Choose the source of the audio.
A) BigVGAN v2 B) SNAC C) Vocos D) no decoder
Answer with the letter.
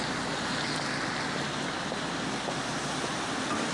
D